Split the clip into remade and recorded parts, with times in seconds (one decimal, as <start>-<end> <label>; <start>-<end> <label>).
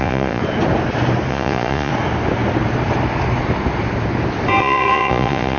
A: 0.0-0.4 remade; 0.4-1.3 recorded; 1.3-1.9 remade; 1.9-4.6 recorded; 4.6-5.6 remade